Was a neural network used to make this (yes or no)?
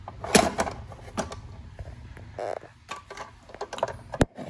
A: no